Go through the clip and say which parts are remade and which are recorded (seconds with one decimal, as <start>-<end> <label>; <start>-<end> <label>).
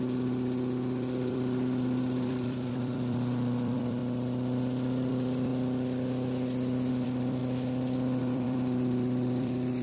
0.0-4.0 remade; 4.0-5.1 recorded; 5.1-5.5 remade; 5.5-6.9 recorded; 6.9-7.4 remade; 7.4-8.2 recorded; 8.2-9.8 remade